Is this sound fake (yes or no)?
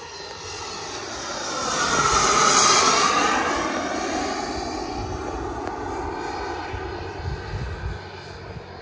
no